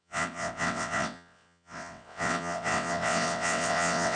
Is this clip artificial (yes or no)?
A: yes